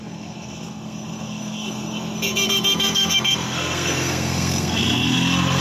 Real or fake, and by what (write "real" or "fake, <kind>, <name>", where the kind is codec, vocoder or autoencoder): fake, codec, SNAC